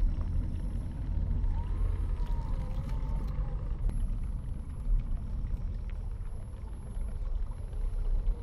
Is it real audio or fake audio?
real